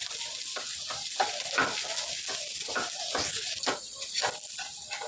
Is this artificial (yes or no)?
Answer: no